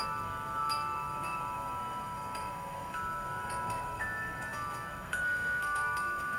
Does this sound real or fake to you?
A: fake